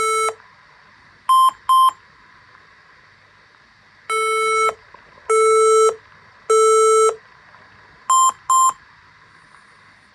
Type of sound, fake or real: real